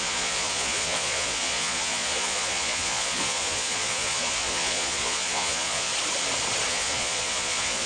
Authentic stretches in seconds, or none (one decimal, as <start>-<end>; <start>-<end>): 5.9-6.7